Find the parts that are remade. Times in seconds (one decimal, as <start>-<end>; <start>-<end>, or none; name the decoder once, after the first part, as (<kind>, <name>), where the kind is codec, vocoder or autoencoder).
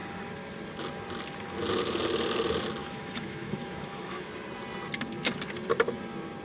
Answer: 2.8-4.3 (autoencoder, DAC-VAE)